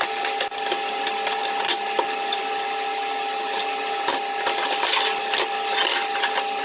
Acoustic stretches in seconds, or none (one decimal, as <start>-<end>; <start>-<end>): 0.0-6.6